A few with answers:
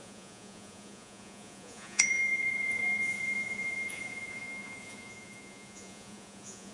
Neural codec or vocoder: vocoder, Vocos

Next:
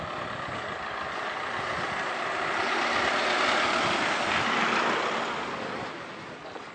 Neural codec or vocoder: none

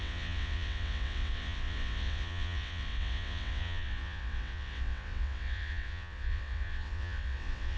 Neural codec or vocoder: vocoder, WaveNeXt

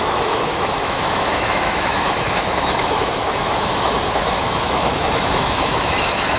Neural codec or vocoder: autoencoder, DAC-VAE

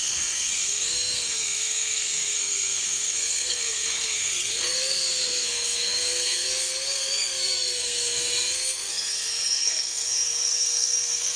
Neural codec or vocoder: codec, SNAC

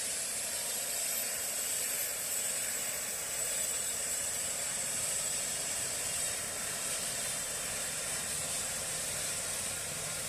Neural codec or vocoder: vocoder, BigVGAN v2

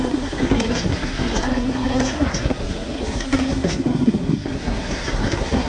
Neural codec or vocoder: codec, SNAC